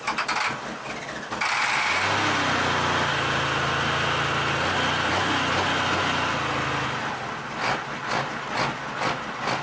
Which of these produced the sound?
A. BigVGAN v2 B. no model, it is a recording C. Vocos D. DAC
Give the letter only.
B